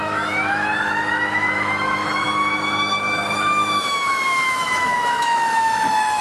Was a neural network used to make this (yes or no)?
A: yes